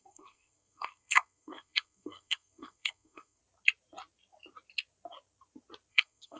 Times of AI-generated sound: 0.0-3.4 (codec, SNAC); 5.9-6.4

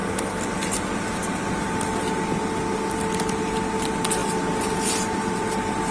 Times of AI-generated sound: none

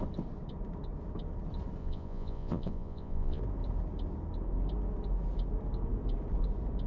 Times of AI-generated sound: 1.8-3.4 (vocoder, Vocos)

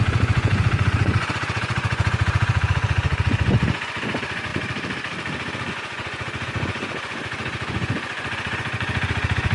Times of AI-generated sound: 0.0-4.5 (vocoder, Vocos); 5.7-9.5

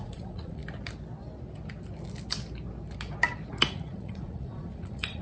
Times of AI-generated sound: 0.0-0.6 (vocoder, Vocos); 3.7-5.2

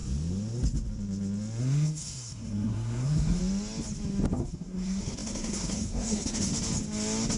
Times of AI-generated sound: 1.6-3.4 (codec, SNAC); 4.3-6.5

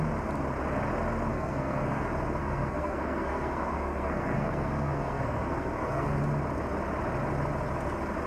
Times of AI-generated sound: 1.3-2.0 (codec, SNAC); 2.4-6.2

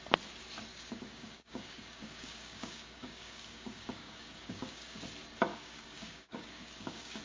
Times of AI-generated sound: 0.7-5.0 (codec, DAC); 5.5-7.2